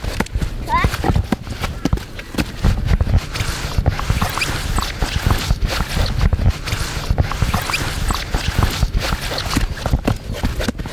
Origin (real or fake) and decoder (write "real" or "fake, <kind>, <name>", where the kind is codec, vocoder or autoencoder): real